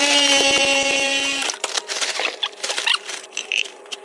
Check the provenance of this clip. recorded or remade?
remade